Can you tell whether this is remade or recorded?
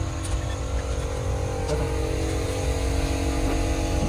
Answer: recorded